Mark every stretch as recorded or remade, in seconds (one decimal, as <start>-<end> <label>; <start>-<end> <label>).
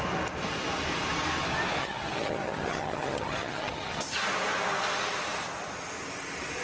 0.0-1.8 recorded; 1.8-4.0 remade; 4.0-6.6 recorded